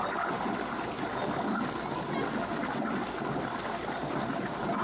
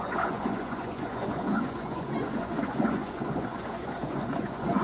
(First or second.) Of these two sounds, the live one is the first